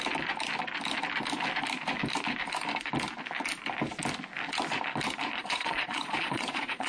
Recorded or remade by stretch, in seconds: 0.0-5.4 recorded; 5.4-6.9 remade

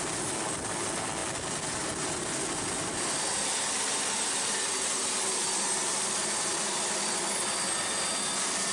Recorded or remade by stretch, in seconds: 0.0-8.7 recorded

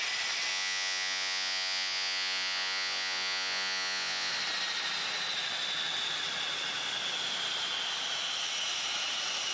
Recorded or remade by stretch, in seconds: 0.0-0.5 recorded; 0.5-4.3 remade; 4.3-9.5 recorded